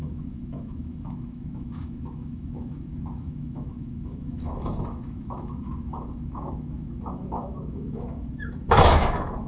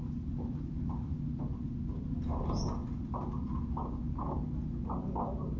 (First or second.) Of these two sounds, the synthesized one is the first